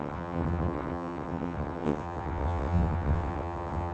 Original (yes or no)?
no